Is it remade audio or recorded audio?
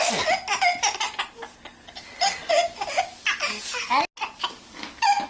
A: recorded